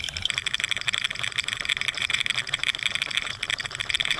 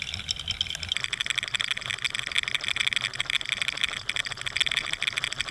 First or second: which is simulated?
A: first